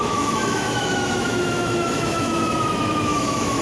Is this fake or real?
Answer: fake